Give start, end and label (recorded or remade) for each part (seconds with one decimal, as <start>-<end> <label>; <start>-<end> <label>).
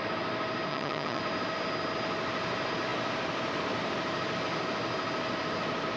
0.0-0.7 recorded; 0.7-1.2 remade; 1.2-6.0 recorded